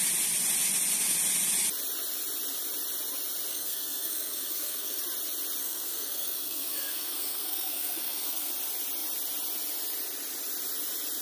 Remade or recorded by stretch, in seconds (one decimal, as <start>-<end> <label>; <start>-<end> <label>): 0.0-3.5 recorded; 3.5-5.0 remade; 5.0-5.6 recorded; 5.6-8.5 remade; 8.5-11.2 recorded